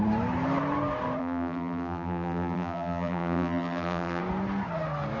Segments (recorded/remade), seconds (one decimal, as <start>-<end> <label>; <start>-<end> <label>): 0.0-1.2 recorded; 1.2-4.2 remade; 4.2-5.2 recorded